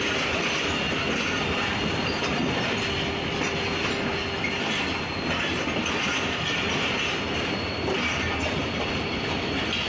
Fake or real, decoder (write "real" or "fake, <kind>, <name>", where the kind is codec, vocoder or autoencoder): real